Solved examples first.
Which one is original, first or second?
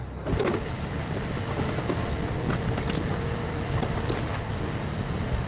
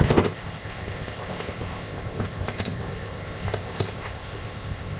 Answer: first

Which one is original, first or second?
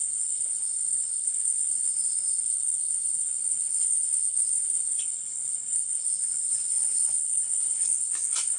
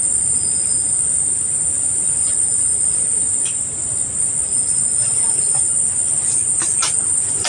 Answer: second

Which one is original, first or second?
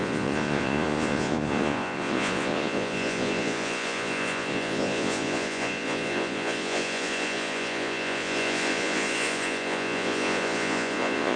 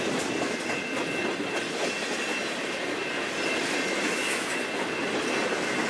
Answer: second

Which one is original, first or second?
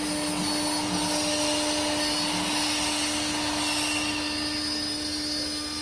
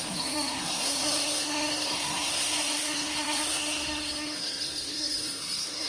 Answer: first